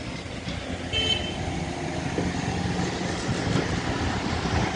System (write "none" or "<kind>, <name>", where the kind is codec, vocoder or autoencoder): none